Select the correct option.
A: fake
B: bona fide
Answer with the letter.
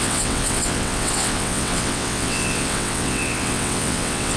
A